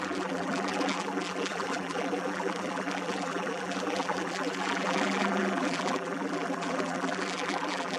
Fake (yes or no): yes